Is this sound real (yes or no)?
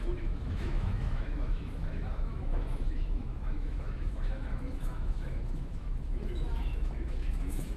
no